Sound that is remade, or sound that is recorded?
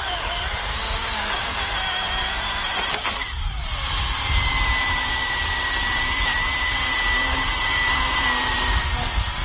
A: remade